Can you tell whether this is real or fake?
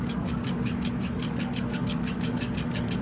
fake